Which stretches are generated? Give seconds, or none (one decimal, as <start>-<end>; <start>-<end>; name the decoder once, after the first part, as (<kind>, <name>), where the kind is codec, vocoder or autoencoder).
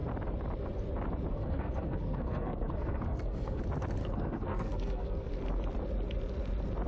1.3-3.6 (codec, SNAC); 4.0-5.3